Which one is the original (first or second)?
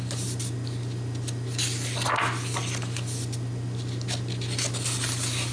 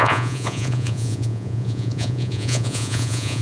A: first